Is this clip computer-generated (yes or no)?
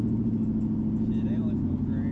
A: no